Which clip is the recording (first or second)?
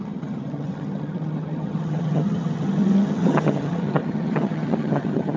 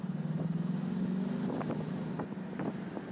second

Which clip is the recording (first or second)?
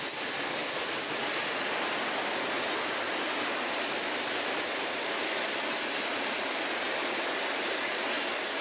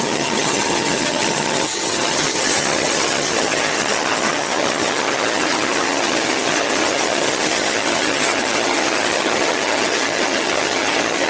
first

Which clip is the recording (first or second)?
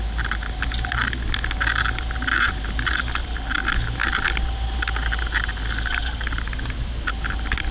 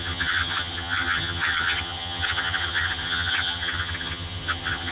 first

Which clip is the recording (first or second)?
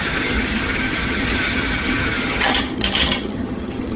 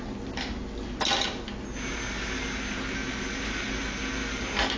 second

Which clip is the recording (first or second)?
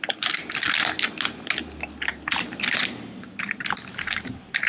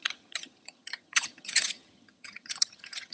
first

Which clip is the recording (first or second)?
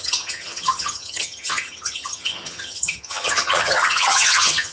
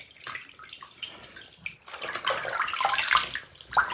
second